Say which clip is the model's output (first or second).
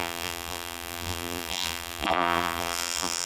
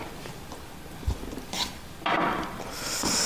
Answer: first